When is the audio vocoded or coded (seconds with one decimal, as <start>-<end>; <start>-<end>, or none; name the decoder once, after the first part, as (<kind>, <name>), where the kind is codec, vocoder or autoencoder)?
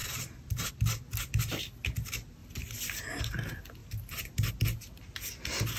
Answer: 0.0-0.7 (vocoder, BigVGAN v2); 3.8-4.5